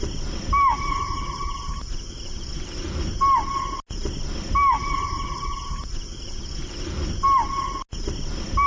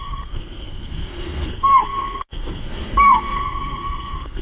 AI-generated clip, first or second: second